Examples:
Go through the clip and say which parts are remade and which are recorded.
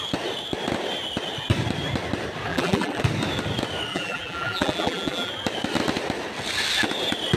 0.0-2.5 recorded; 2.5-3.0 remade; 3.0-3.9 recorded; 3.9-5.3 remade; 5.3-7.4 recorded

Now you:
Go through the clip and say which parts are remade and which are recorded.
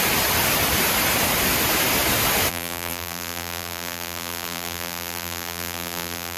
0.0-2.5 recorded; 2.5-6.4 remade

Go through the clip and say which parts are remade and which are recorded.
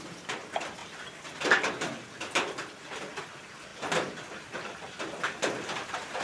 0.0-6.2 recorded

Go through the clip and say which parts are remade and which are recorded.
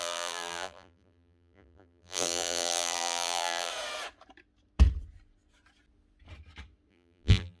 0.0-3.7 remade; 3.7-6.9 recorded; 6.9-7.6 remade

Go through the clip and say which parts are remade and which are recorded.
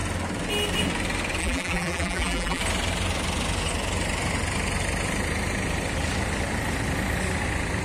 0.0-1.4 recorded; 1.4-2.6 remade; 2.6-7.8 recorded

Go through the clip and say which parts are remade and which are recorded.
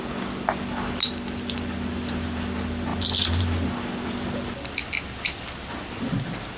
0.0-4.8 remade; 4.8-6.1 recorded; 6.1-6.6 remade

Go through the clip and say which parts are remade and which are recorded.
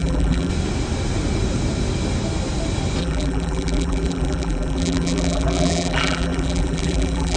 0.0-0.5 remade; 0.5-3.0 recorded; 3.0-7.4 remade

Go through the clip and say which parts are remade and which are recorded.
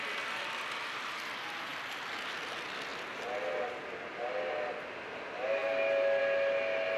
0.0-7.0 recorded